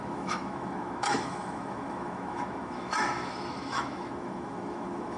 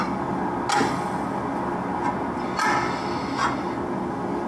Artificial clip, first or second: first